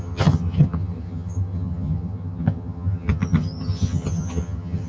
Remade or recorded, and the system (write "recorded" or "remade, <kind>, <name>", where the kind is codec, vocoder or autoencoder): remade, vocoder, HiFi-GAN